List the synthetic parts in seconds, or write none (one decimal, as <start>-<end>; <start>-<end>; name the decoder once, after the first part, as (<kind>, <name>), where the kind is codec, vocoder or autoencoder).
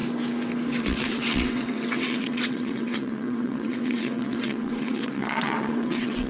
0.8-6.3 (vocoder, WaveNeXt)